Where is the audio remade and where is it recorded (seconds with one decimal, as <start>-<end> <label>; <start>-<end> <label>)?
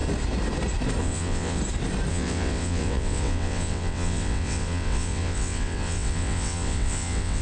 0.0-1.0 recorded; 1.0-1.6 remade; 1.6-2.1 recorded; 2.1-7.4 remade